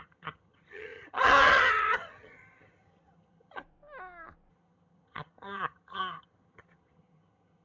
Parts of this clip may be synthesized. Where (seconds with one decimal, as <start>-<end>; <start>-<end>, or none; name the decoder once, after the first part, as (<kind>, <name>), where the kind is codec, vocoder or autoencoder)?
0.0-3.6 (vocoder, HiFi-GAN); 4.5-7.6